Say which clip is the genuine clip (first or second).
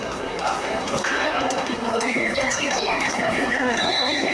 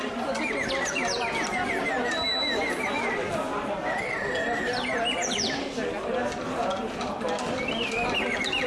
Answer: second